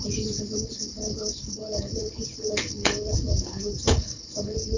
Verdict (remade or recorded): remade